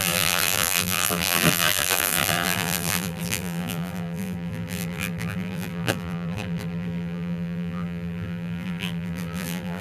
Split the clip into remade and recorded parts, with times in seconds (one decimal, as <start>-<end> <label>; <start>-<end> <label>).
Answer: 0.0-9.8 remade